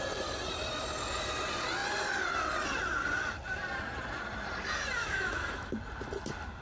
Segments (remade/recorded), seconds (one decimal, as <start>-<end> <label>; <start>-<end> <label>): 0.0-5.0 recorded; 5.0-5.7 remade; 5.7-6.6 recorded